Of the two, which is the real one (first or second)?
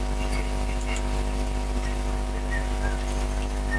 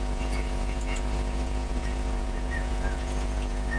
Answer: first